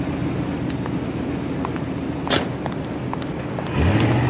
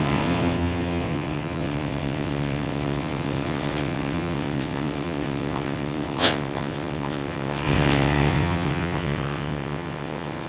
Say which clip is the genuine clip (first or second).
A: first